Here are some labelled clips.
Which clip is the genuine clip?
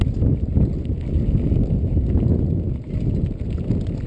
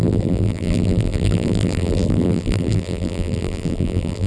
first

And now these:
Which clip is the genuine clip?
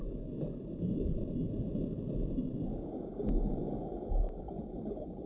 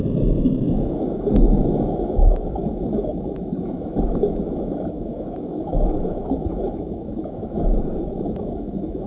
first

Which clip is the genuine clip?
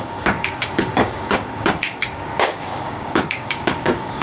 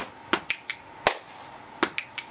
second